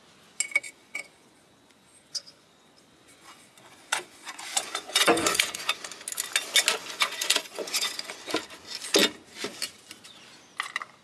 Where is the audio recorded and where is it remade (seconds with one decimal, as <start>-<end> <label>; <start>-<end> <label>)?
0.0-0.8 recorded; 0.8-5.8 remade; 5.8-6.8 recorded; 6.8-8.2 remade; 8.2-11.0 recorded